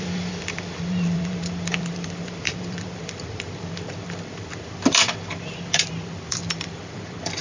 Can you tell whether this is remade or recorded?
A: remade